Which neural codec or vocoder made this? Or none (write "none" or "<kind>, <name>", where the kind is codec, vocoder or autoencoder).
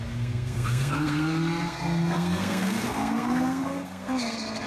codec, SNAC